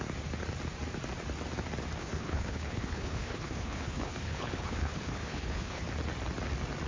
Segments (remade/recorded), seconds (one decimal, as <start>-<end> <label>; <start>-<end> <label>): 0.0-2.0 recorded; 2.0-5.8 remade; 5.8-6.9 recorded